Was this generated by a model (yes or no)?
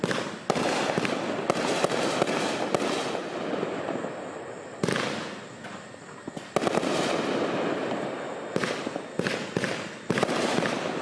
no